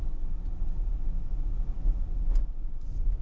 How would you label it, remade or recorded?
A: recorded